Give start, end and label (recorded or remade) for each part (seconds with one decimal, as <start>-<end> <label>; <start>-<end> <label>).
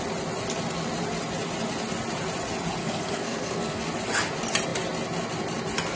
0.0-2.8 recorded; 2.8-3.8 remade; 3.8-6.0 recorded